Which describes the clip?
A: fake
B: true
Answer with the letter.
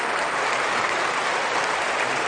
B